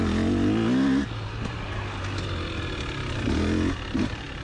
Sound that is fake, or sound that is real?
real